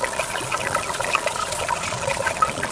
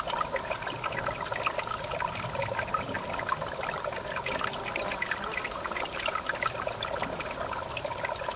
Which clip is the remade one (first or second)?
first